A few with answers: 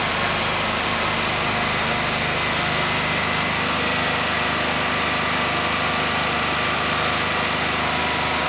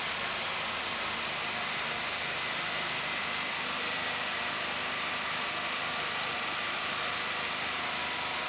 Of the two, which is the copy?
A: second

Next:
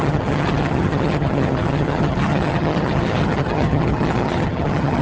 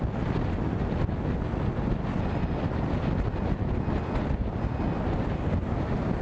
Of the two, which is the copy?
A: first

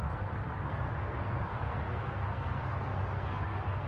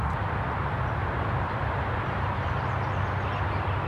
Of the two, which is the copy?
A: first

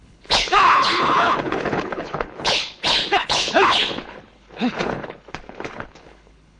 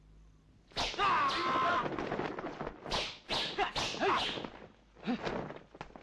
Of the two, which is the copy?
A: first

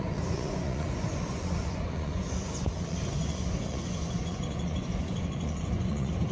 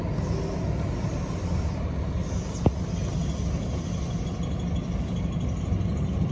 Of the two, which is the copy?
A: first